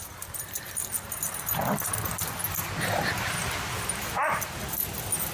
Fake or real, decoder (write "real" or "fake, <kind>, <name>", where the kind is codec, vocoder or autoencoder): real